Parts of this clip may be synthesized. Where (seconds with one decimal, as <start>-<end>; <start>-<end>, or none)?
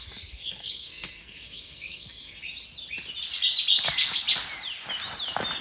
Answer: 0.0-2.4